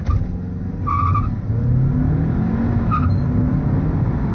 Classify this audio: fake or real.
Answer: real